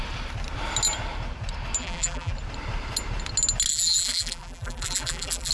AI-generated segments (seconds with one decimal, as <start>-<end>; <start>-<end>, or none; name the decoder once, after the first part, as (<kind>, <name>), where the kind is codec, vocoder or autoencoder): 1.8-2.3 (vocoder, BigVGAN v2); 3.7-5.5